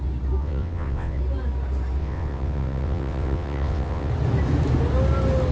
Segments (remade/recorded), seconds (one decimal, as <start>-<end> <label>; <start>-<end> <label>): 0.0-0.4 recorded; 0.4-1.2 remade; 1.2-2.0 recorded; 2.0-4.1 remade; 4.1-5.5 recorded